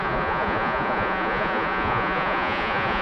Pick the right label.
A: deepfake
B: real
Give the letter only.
A